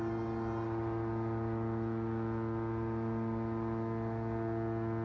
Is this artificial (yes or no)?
no